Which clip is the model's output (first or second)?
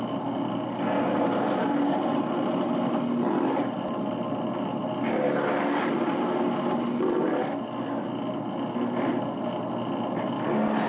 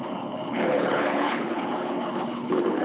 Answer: second